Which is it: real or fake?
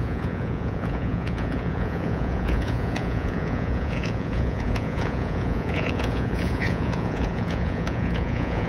fake